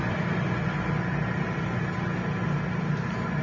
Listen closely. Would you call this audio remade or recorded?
recorded